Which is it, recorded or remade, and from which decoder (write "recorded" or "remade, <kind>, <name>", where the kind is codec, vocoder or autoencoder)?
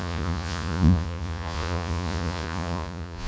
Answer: remade, vocoder, Vocos